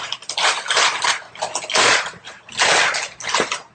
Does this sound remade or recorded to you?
recorded